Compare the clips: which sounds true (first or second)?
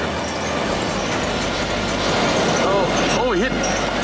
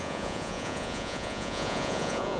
first